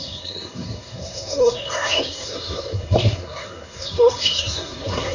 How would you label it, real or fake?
fake